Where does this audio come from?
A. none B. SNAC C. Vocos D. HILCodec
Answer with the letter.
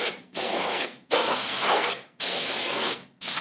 B